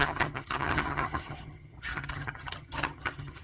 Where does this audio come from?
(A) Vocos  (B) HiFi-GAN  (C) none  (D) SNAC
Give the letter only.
B